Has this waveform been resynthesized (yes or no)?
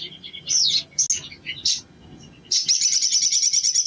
no